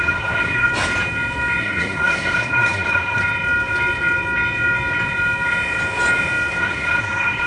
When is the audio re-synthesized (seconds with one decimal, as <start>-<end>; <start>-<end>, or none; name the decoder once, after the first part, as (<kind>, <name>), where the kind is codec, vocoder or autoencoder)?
0.0-0.7 (codec, SNAC); 1.6-3.2; 6.6-7.5